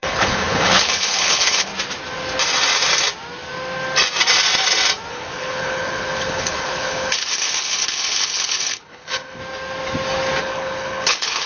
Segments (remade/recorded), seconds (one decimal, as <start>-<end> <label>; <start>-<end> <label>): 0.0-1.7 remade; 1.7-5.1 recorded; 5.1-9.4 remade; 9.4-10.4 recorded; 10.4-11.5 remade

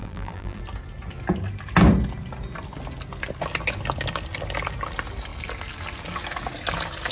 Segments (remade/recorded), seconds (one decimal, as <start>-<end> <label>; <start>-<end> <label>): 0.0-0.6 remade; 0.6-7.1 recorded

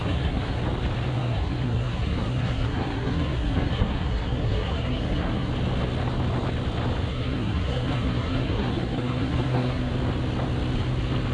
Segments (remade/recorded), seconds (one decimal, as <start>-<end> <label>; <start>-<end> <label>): 0.0-0.6 remade; 0.6-1.1 recorded; 1.1-5.5 remade; 5.5-7.1 recorded; 7.1-9.9 remade; 9.9-11.3 recorded

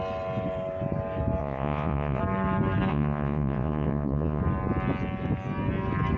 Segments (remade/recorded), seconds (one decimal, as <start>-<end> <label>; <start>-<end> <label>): 0.0-1.4 recorded; 1.4-2.2 remade; 2.2-2.9 recorded; 2.9-4.4 remade; 4.4-6.2 recorded

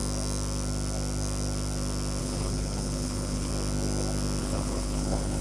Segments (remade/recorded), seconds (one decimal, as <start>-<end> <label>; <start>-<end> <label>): 0.0-2.2 recorded; 2.2-3.5 remade; 3.5-4.4 recorded; 4.4-5.4 remade

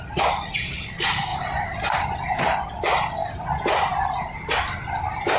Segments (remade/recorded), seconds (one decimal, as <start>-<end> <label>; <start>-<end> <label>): 0.0-5.4 recorded

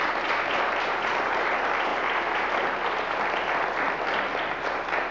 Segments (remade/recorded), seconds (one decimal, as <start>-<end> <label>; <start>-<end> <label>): 0.0-5.1 recorded

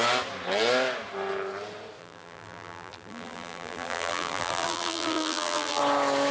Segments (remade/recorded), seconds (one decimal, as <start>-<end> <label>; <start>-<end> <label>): 0.0-2.0 recorded; 2.0-5.8 remade; 5.8-6.3 recorded